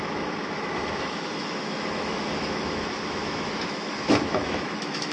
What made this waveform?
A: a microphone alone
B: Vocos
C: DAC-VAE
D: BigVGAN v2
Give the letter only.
C